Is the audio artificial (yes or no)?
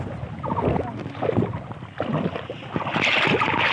no